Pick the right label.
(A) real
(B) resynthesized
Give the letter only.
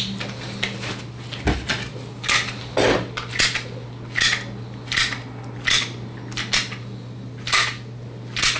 A